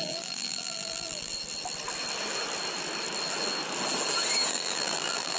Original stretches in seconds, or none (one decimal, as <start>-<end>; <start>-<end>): 1.3-4.5